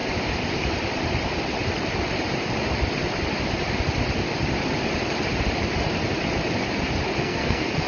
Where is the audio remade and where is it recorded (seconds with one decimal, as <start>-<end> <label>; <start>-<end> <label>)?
0.0-7.2 recorded; 7.2-7.9 remade